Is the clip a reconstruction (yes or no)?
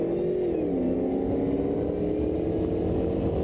no